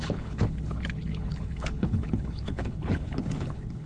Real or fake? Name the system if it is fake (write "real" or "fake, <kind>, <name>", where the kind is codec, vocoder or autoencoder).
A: fake, codec, HILCodec